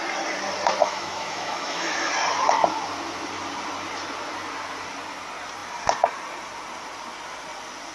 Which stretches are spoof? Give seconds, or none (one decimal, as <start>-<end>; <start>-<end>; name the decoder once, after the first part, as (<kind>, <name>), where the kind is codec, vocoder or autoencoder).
0.8-2.1 (autoencoder, DAC-VAE)